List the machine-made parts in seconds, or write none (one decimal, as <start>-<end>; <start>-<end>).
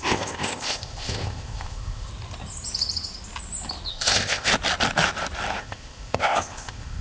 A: 0.0-2.1; 3.9-4.5; 5.6-7.0